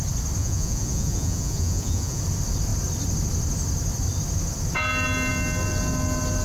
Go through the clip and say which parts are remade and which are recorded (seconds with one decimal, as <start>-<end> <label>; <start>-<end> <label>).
0.0-0.4 recorded; 0.4-2.2 remade; 2.2-6.4 recorded